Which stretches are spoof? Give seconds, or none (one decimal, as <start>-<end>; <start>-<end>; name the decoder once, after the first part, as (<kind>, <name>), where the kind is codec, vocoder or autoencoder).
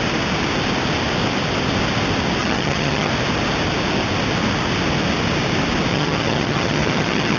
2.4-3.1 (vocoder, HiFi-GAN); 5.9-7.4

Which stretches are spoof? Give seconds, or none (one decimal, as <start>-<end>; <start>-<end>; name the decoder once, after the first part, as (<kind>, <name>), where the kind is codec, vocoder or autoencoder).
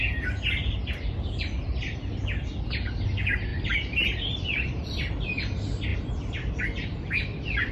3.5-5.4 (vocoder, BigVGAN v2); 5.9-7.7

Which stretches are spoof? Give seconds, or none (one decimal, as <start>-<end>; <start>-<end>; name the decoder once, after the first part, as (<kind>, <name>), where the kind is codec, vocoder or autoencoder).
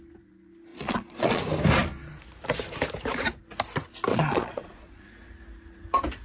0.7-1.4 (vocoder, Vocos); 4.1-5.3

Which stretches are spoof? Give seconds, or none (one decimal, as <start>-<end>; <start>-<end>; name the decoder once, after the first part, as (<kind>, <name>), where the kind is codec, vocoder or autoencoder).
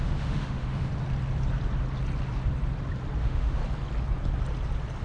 0.0-0.9 (autoencoder, DAC-VAE); 3.2-3.6